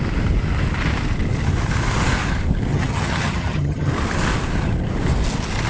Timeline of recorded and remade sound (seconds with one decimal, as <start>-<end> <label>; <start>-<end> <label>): 0.0-2.7 recorded; 2.7-3.9 remade; 3.9-5.7 recorded